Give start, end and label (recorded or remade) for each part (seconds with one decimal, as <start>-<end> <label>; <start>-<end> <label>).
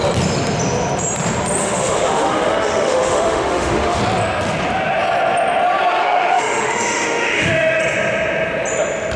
0.0-1.6 recorded; 1.6-4.0 remade; 4.0-6.0 recorded; 6.0-7.8 remade; 7.8-9.2 recorded